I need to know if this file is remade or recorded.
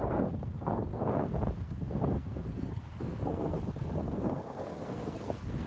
remade